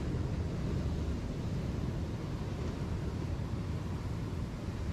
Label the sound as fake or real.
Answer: real